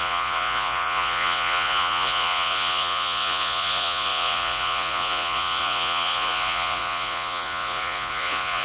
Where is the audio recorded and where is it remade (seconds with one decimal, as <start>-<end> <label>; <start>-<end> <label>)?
0.0-8.6 remade